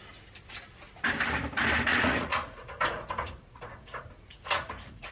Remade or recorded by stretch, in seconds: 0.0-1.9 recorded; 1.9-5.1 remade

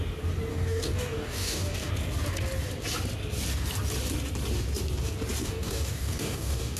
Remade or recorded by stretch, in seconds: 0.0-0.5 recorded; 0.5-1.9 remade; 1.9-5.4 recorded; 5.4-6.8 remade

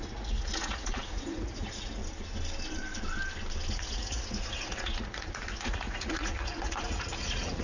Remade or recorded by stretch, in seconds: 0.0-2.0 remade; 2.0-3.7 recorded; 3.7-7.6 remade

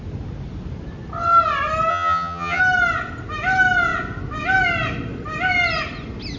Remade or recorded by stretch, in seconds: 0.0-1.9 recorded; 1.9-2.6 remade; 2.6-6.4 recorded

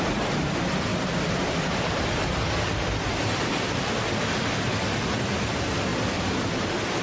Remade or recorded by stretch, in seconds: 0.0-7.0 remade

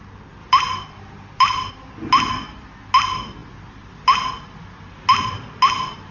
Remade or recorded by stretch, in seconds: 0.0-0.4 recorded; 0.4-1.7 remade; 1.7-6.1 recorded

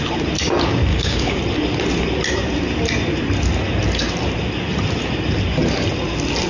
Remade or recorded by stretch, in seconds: 0.0-0.9 recorded; 0.9-1.4 remade; 1.4-6.5 recorded

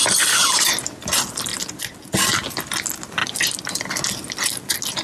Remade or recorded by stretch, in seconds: 0.0-5.0 recorded